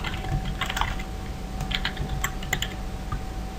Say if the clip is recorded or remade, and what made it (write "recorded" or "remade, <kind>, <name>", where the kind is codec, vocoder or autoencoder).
recorded